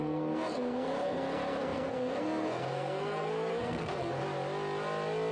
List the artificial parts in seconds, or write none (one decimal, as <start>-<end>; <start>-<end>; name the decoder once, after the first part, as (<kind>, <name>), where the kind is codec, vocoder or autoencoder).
0.0-4.2 (codec, SNAC)